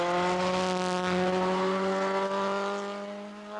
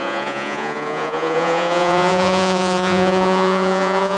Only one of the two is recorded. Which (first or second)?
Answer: first